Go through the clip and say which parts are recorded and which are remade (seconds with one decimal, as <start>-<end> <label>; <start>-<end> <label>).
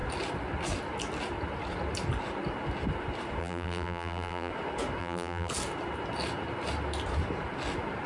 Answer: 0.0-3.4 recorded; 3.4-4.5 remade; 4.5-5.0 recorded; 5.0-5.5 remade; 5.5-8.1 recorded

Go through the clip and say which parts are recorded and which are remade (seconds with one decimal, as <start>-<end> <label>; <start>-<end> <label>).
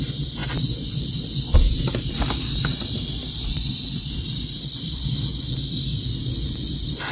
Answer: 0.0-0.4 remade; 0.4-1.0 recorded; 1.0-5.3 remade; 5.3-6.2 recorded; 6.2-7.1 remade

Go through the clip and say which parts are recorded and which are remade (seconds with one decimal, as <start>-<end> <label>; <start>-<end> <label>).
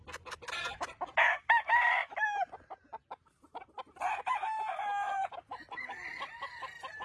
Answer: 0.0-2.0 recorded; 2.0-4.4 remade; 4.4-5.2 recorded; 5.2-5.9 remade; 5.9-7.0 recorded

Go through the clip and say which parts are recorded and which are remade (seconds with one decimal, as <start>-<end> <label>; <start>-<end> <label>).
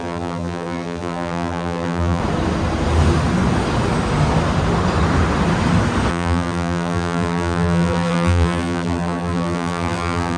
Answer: 0.0-2.2 remade; 2.2-6.1 recorded; 6.1-10.4 remade